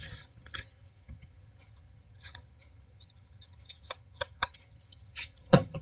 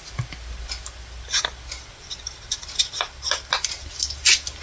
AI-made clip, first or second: first